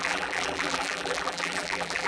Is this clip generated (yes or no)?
yes